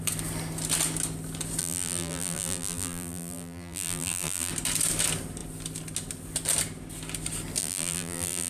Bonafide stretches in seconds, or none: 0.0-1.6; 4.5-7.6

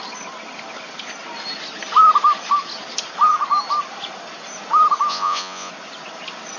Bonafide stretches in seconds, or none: 0.0-5.1; 5.7-6.6

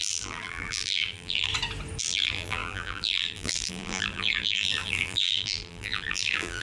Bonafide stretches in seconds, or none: 1.5-2.0

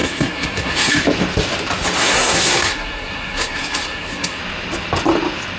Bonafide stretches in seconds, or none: 0.9-2.0; 4.4-5.6